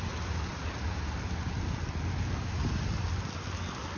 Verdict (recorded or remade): recorded